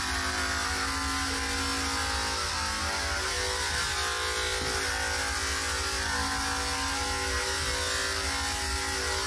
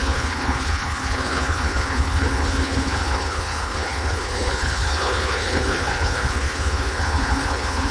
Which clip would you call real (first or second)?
first